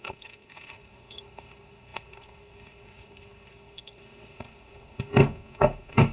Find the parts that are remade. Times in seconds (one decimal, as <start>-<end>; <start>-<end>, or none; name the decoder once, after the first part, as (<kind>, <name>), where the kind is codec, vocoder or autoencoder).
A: 0.0-6.1 (codec, SNAC)